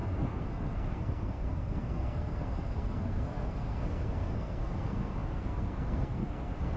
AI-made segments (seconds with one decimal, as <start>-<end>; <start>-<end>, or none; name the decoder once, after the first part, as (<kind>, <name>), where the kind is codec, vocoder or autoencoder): 0.0-6.8 (codec, SNAC)